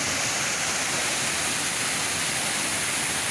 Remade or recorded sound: recorded